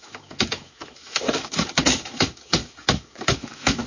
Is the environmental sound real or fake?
fake